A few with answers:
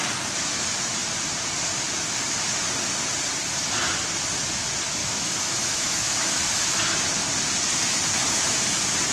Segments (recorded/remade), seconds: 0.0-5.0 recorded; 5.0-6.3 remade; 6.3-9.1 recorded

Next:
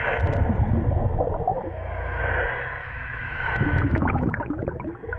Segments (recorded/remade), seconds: 0.0-1.5 recorded; 1.5-2.2 remade; 2.2-2.8 recorded; 2.8-4.4 remade; 4.4-5.2 recorded